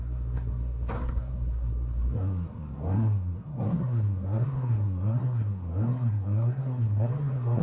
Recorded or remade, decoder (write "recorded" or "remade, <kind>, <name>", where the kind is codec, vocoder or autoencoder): remade, codec, SNAC